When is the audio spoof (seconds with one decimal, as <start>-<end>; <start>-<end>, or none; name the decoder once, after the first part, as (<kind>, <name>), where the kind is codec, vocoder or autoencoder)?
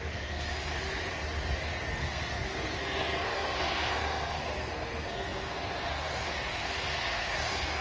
0.0-0.7 (codec, SNAC); 2.0-7.8